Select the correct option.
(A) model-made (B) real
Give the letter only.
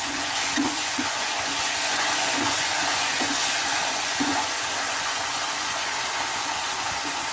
A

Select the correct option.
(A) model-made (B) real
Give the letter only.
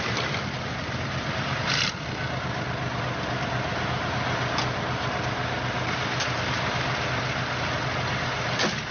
B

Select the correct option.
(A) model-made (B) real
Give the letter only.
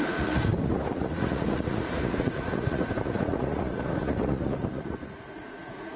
A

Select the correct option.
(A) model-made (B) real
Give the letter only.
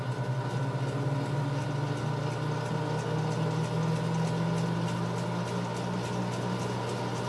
B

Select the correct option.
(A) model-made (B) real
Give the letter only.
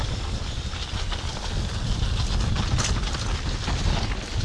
B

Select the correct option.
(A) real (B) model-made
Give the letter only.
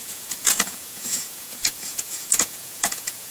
B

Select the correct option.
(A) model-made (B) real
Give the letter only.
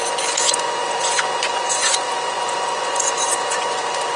A